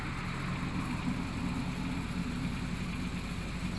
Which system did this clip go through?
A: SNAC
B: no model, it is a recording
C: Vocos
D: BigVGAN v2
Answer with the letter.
B